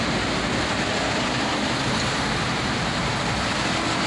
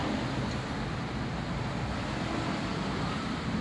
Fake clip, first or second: first